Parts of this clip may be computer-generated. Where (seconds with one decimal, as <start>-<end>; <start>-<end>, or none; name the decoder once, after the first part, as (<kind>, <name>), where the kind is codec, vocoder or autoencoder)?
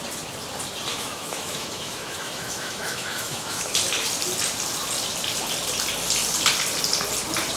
0.9-3.7 (autoencoder, DAC-VAE)